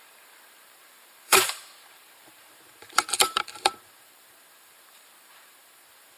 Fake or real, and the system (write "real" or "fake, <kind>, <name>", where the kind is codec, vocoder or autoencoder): fake, vocoder, BigVGAN v2